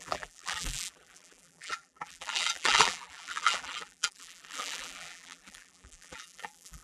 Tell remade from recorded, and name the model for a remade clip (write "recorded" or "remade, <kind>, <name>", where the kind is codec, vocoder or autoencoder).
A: remade, vocoder, BigVGAN v2